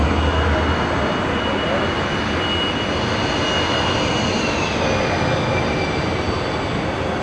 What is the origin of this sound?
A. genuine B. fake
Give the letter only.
A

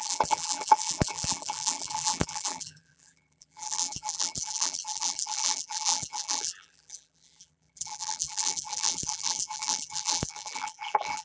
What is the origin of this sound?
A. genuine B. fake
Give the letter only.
B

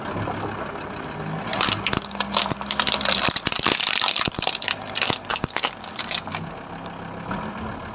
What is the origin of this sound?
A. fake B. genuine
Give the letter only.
B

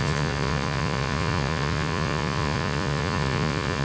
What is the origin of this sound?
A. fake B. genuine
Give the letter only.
A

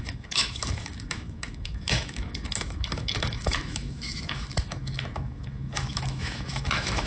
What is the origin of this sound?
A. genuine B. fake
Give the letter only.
B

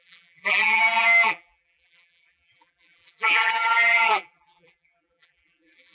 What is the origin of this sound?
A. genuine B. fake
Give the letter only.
B